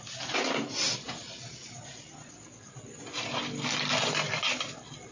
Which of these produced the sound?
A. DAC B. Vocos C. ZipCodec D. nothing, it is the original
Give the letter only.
D